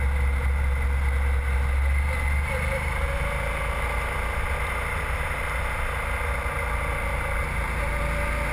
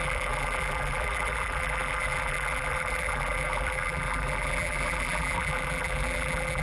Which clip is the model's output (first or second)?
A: second